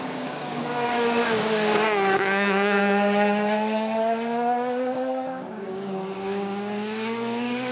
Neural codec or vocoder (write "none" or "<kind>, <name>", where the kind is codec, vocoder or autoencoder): codec, DAC